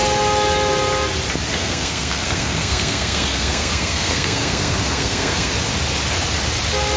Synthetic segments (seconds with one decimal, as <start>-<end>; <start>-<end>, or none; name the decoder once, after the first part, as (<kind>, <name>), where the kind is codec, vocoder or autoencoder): 1.5-5.5 (codec, SNAC)